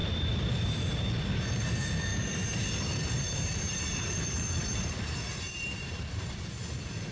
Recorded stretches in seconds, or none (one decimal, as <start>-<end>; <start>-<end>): 0.0-2.1; 6.4-7.1